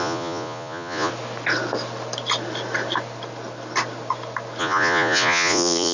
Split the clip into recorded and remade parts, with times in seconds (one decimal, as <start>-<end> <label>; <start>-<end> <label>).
0.0-1.1 remade; 1.1-4.6 recorded; 4.6-5.9 remade